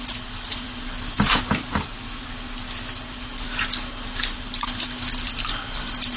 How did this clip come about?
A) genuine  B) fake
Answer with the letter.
A